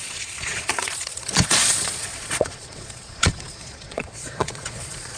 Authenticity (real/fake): fake